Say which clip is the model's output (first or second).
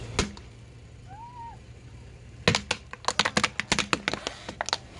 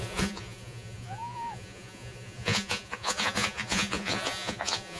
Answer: second